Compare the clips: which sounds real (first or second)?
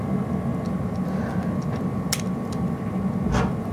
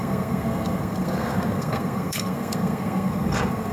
first